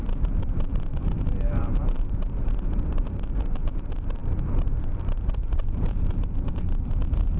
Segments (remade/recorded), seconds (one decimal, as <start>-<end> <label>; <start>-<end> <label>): 0.0-7.4 remade